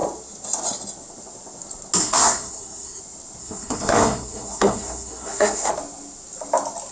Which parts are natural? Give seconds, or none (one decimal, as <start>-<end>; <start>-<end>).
0.0-2.0; 3.0-3.4; 5.7-6.9